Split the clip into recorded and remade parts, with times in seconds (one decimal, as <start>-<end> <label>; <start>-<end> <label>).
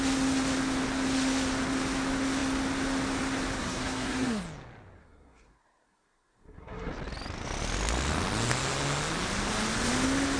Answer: 0.0-3.6 recorded; 3.6-4.4 remade; 4.4-5.0 recorded; 5.0-6.9 remade; 6.9-10.4 recorded